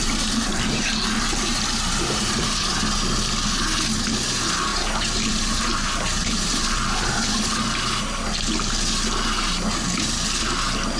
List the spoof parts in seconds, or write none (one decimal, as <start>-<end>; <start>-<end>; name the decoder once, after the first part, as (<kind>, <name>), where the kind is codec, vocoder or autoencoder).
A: 0.0-2.7 (vocoder, BigVGAN v2); 4.7-7.4